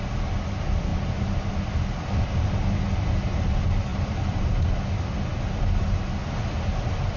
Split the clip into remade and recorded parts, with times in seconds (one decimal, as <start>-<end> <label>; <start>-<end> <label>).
0.0-3.9 recorded; 3.9-4.4 remade; 4.4-7.2 recorded